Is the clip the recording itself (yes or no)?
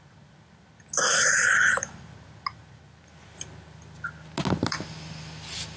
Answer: yes